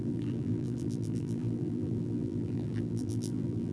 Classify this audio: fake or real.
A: fake